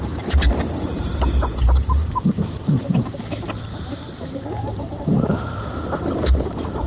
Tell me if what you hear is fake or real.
fake